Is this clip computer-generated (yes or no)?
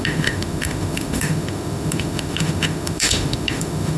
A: yes